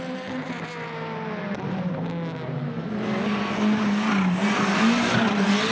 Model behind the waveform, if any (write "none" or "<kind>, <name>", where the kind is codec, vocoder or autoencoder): none